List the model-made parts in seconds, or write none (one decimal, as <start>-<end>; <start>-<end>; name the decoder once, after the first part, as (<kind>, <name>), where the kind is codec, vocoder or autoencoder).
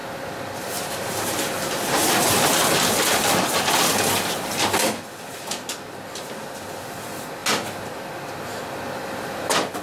0.0-2.3 (vocoder, BigVGAN v2)